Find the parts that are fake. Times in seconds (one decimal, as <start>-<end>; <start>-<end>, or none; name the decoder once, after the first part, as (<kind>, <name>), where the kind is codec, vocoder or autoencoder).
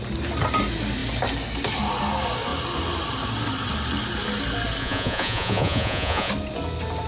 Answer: 4.8-6.3 (vocoder, Vocos)